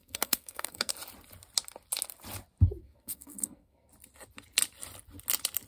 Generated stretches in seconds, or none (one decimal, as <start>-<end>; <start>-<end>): 0.0-0.9; 2.8-3.9